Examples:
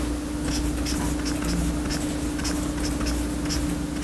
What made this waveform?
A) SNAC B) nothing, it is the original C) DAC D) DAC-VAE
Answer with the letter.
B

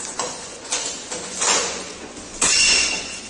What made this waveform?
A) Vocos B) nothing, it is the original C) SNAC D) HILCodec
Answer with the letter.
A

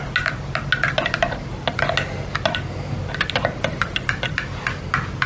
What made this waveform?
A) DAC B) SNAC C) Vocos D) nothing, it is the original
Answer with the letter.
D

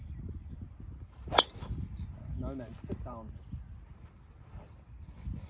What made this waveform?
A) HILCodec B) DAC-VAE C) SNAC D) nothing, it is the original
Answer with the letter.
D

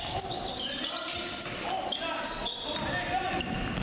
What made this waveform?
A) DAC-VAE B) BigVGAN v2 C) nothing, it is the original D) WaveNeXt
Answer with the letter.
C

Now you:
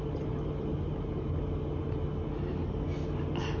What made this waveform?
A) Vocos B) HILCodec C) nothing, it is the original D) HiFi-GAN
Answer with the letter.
C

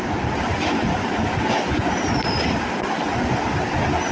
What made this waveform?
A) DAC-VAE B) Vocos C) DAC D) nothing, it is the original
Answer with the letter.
D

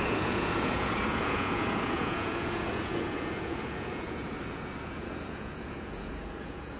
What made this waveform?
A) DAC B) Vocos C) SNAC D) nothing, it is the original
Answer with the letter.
B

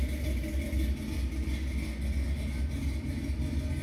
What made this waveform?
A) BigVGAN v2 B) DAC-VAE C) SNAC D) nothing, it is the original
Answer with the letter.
D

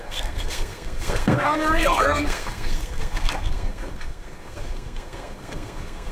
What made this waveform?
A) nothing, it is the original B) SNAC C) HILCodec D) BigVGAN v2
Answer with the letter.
B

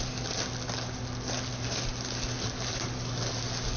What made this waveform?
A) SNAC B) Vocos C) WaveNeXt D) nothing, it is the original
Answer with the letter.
D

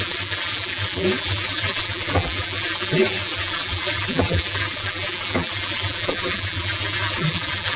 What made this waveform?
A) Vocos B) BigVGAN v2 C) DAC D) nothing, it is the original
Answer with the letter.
B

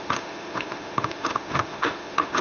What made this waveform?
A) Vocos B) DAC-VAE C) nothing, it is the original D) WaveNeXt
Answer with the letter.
B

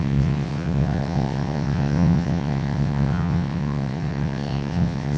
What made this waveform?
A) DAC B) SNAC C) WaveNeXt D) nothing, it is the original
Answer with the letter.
C